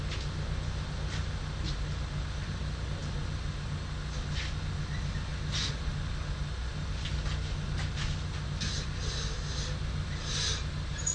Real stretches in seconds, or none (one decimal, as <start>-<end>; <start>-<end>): 0.0-11.1